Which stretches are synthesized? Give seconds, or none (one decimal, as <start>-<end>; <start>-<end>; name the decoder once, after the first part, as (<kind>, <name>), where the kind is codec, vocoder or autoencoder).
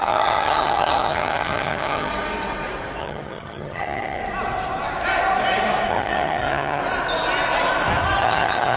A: 0.0-2.1 (vocoder, HiFi-GAN); 3.0-4.2; 5.9-6.8; 8.2-8.8